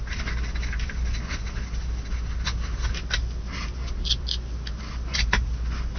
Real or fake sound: real